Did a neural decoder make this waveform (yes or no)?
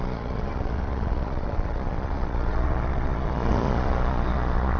yes